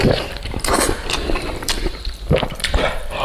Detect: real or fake fake